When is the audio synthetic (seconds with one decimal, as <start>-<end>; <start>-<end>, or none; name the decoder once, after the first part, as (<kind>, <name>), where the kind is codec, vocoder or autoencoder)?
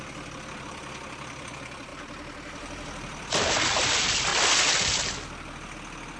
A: 0.0-4.3 (vocoder, BigVGAN v2)